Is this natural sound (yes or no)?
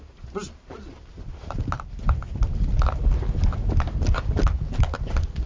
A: yes